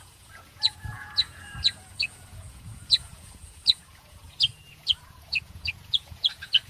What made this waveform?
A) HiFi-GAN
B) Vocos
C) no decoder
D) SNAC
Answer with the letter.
B